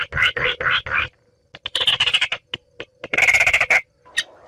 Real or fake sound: real